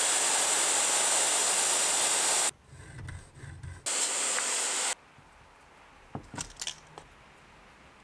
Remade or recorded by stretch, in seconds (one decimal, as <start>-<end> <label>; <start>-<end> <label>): 0.0-8.0 recorded